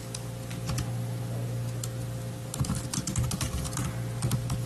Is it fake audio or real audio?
real